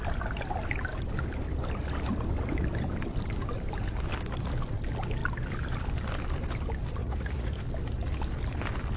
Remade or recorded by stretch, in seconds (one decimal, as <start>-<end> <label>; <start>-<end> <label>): 0.0-7.0 recorded; 7.0-7.5 remade; 7.5-9.0 recorded